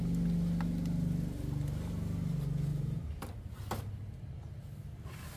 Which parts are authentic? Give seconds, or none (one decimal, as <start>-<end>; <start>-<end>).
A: 0.0-2.7; 3.7-5.4